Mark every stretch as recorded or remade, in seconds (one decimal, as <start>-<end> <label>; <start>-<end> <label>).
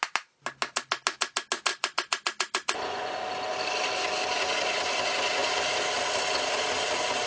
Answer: 0.0-1.7 recorded; 1.7-3.2 remade; 3.2-7.3 recorded